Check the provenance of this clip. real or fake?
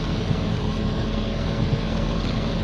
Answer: fake